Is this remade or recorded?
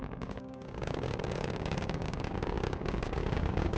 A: remade